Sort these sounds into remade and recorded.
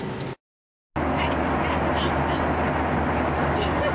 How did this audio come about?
recorded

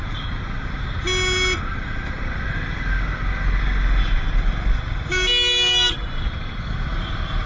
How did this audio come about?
recorded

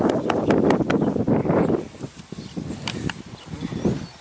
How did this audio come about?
recorded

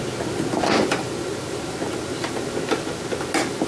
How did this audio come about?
recorded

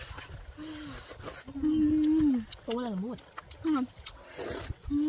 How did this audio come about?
recorded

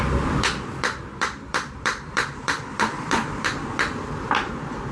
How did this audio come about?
remade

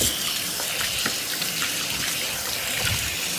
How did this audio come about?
remade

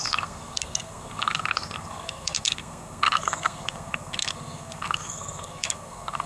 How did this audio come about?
remade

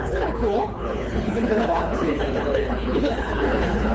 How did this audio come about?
remade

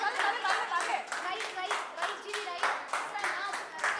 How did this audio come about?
recorded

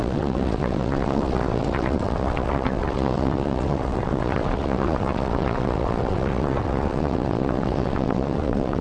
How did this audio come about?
remade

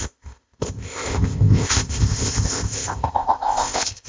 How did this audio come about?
remade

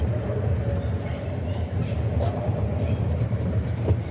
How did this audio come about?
recorded